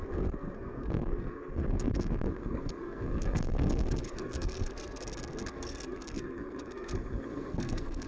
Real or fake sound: fake